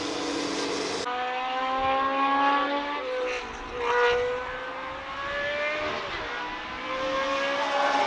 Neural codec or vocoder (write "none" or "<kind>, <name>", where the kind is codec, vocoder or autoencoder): none